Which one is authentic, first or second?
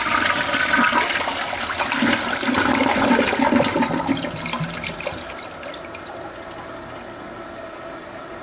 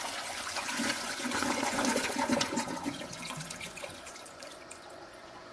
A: first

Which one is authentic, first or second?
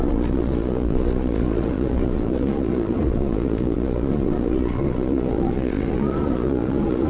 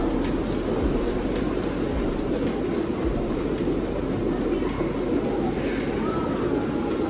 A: second